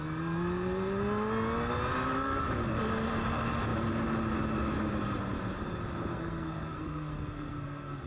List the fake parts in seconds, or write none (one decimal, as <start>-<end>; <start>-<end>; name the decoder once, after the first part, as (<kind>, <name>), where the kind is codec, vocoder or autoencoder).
6.1-8.1 (codec, SNAC)